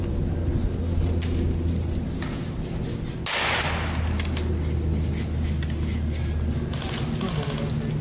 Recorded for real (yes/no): yes